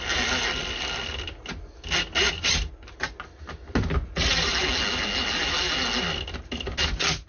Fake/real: real